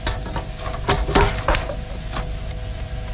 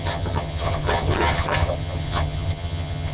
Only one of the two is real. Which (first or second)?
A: first